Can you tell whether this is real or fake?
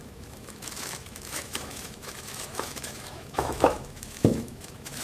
fake